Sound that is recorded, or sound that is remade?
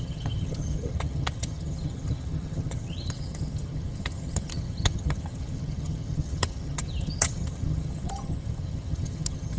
remade